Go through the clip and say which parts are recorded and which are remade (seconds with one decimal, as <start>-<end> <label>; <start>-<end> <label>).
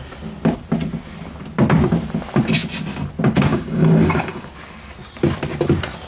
0.0-3.5 recorded; 3.5-4.5 remade; 4.5-6.1 recorded